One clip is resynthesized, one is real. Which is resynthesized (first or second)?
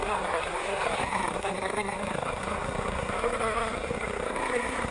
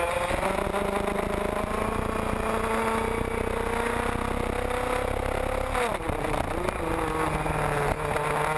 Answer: first